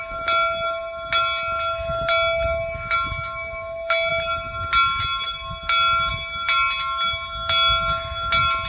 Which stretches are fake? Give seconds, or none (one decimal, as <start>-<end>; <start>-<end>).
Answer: none